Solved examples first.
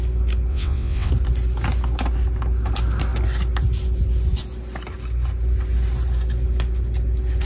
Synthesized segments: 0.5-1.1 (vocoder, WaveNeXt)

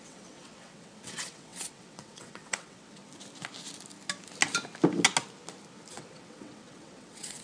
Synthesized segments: 0.0-3.0 (vocoder, WaveNeXt); 5.9-7.4

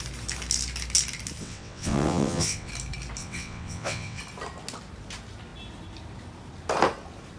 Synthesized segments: 1.4-2.7 (vocoder, WaveNeXt); 3.2-4.2

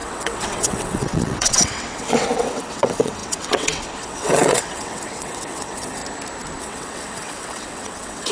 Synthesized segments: 0.0-6.0 (vocoder, WaveNeXt); 6.6-8.3